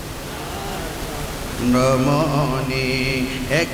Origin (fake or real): real